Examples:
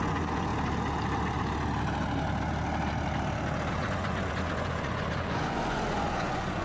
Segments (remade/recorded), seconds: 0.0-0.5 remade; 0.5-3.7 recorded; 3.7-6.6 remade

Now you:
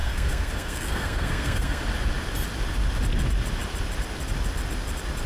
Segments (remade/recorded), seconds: 0.0-1.8 remade; 1.8-5.3 recorded